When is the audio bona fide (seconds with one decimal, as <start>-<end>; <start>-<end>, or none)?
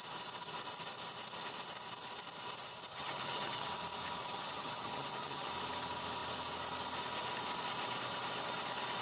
0.0-2.9; 3.7-4.2; 5.5-9.0